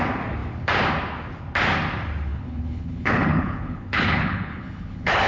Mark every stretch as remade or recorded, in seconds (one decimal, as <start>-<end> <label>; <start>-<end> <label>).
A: 0.0-2.3 recorded; 2.3-5.3 remade